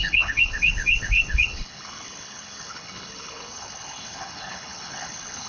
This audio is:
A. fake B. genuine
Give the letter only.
A